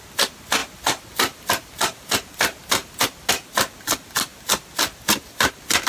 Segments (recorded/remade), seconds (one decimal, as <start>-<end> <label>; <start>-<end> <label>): 0.0-5.9 recorded